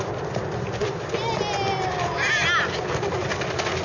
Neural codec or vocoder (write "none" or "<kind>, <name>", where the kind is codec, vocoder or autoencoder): none